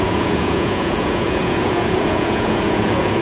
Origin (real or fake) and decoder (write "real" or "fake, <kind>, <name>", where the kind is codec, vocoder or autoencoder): fake, vocoder, Vocos